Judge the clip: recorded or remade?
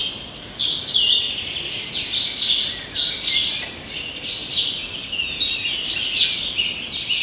recorded